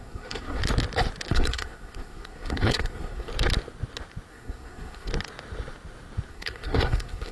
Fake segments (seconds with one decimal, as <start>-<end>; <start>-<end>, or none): 0.0-0.6; 1.3-3.3; 4.3-5.1; 6.3-7.3